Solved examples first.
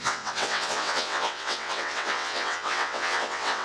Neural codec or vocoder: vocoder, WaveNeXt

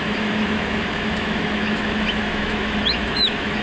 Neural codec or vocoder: autoencoder, DAC-VAE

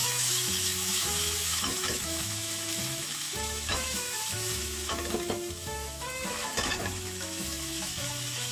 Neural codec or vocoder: autoencoder, DAC-VAE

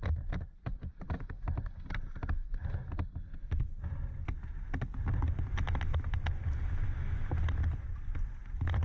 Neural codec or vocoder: none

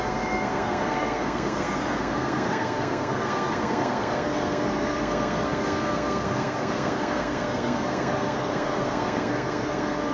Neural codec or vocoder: codec, SNAC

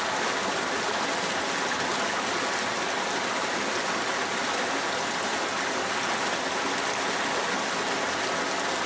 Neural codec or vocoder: none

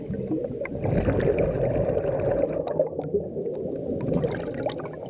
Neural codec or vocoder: none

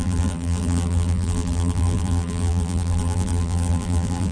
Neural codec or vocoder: vocoder, BigVGAN v2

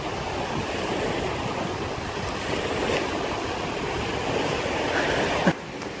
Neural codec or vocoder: none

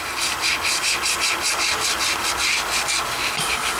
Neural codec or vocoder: none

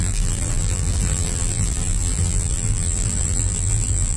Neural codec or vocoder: vocoder, BigVGAN v2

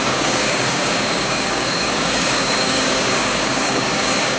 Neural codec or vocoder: codec, DAC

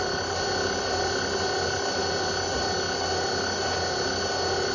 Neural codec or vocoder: none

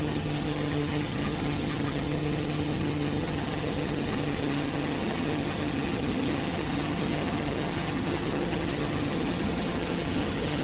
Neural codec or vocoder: vocoder, HiFi-GAN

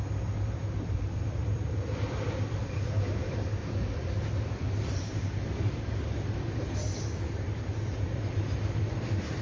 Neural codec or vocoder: vocoder, BigVGAN v2